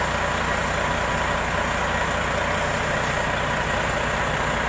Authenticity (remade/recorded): recorded